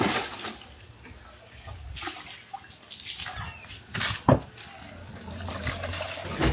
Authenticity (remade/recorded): recorded